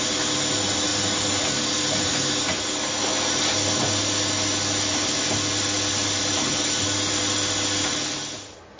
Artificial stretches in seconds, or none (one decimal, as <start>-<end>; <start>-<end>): none